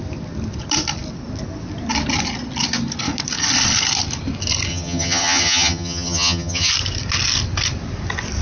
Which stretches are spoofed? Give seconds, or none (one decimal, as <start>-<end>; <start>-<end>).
4.7-6.7